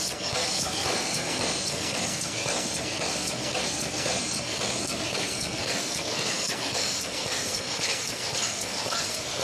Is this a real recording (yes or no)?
no